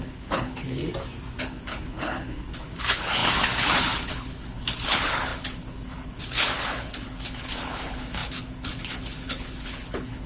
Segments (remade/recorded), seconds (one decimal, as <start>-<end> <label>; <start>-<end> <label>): 0.0-0.8 remade; 0.8-1.4 recorded; 1.4-10.3 remade